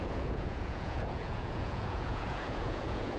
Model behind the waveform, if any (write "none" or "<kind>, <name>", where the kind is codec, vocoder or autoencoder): vocoder, Vocos